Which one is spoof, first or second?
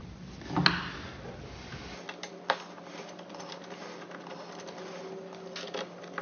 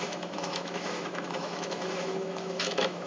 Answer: second